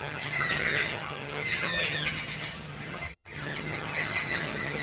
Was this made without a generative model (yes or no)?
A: no